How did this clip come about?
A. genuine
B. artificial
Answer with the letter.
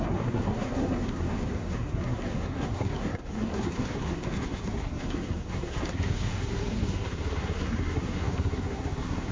B